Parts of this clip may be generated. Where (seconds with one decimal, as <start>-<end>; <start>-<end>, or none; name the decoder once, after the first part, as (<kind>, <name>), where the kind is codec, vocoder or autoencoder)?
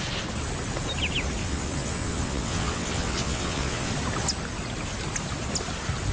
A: 1.4-3.9 (vocoder, WaveNeXt)